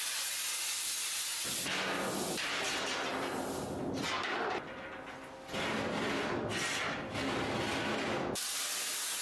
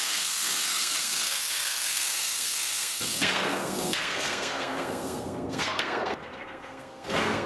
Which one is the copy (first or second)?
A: second